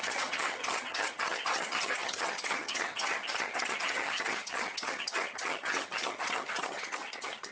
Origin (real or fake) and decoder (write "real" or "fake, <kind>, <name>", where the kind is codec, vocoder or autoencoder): fake, vocoder, HiFi-GAN